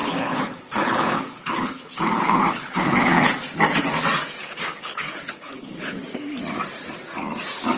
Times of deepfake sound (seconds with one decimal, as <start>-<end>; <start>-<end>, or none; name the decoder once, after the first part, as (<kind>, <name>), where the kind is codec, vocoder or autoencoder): 0.0-3.3 (codec, HILCodec); 4.4-6.0